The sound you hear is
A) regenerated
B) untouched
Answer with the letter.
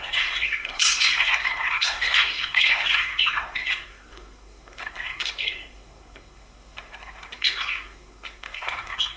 A